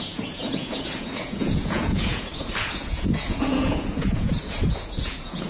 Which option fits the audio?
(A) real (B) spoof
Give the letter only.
B